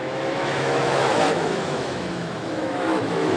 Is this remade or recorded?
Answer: remade